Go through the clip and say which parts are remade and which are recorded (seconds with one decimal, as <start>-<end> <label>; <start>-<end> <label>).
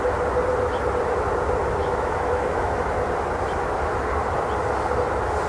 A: 0.0-1.8 recorded; 1.8-3.0 remade; 3.0-5.5 recorded